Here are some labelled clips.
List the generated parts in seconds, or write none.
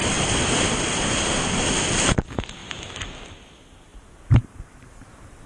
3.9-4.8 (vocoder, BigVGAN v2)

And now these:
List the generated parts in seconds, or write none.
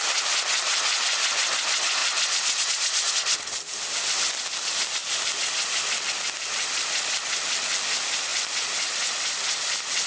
5.0-6.1 (vocoder, BigVGAN v2); 8.3-10.1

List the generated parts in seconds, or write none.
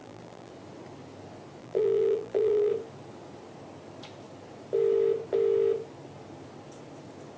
0.0-0.5 (vocoder, BigVGAN v2); 1.6-2.7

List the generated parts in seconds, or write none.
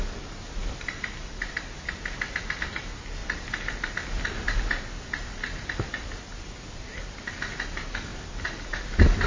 0.6-2.8 (vocoder, BigVGAN v2); 3.2-7.3